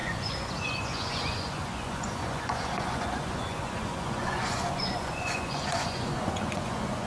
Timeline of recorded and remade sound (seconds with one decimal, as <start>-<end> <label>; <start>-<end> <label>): 0.0-7.1 remade